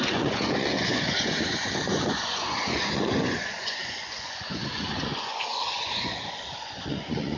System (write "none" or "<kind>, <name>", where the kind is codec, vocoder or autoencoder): vocoder, Vocos